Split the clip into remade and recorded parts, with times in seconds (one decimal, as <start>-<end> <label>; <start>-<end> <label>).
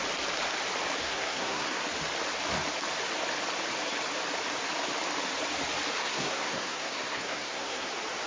0.0-1.0 recorded; 1.0-1.8 remade; 1.8-6.0 recorded; 6.0-7.9 remade; 7.9-8.3 recorded